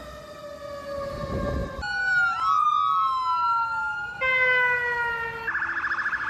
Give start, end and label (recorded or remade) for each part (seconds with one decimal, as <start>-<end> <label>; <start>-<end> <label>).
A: 0.0-6.3 recorded